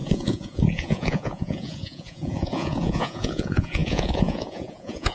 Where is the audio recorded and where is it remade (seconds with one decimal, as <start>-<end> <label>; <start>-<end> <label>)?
0.0-5.1 remade